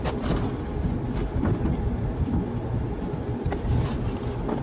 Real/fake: real